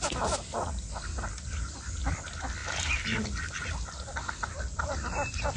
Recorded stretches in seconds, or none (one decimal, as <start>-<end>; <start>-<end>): 0.0-5.6